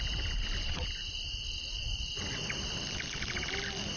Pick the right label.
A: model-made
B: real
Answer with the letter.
B